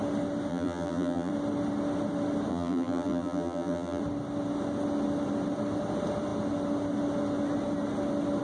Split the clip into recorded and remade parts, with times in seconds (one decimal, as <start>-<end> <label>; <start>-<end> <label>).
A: 0.0-0.5 recorded; 0.5-1.3 remade; 1.3-2.5 recorded; 2.5-4.0 remade; 4.0-8.4 recorded